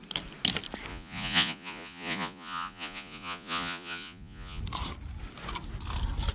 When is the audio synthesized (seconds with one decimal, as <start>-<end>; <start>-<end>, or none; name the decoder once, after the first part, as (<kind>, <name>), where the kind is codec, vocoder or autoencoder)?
0.9-4.6 (vocoder, Vocos)